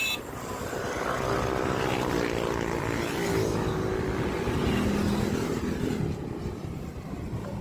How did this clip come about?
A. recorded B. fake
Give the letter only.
A